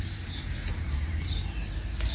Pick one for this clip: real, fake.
fake